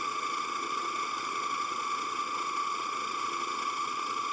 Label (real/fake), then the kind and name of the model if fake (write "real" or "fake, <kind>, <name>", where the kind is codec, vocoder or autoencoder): fake, vocoder, Vocos